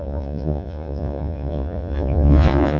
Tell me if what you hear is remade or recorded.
remade